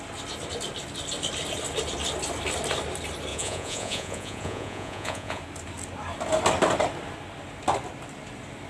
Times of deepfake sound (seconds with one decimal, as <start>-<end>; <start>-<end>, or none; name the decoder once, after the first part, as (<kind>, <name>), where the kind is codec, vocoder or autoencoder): 3.3-5.4 (vocoder, Vocos)